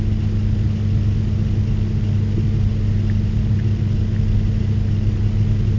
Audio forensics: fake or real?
real